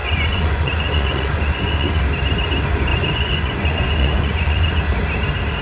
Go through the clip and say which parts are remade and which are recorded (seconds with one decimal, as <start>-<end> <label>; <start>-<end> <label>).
0.0-2.0 remade; 2.0-2.9 recorded; 2.9-4.8 remade; 4.8-5.6 recorded